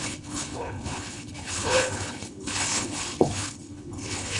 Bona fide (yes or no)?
no